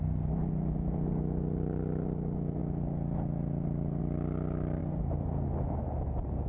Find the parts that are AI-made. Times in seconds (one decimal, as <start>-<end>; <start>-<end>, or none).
none